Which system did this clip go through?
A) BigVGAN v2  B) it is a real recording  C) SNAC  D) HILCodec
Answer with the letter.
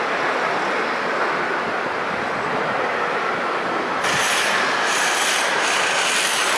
B